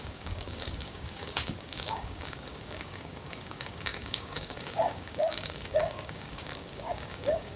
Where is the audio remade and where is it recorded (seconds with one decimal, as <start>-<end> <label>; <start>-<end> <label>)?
0.0-7.6 remade